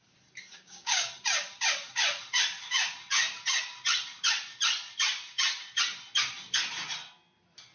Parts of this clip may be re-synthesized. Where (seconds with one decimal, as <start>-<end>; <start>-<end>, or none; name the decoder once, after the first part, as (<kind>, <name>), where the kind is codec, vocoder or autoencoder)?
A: 0.5-1.1 (codec, DAC)